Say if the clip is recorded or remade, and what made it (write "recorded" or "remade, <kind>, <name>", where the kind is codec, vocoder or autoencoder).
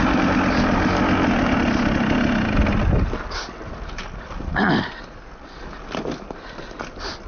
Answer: recorded